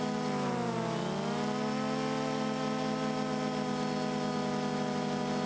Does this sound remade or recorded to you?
recorded